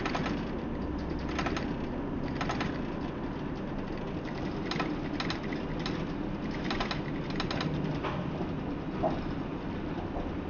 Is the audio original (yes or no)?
yes